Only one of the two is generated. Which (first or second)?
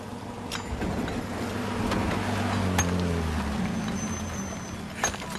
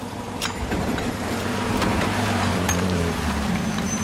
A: second